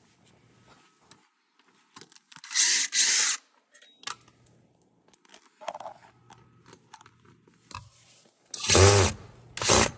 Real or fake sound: real